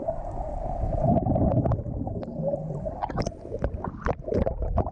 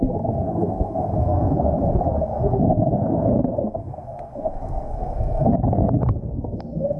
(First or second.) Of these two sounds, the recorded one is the first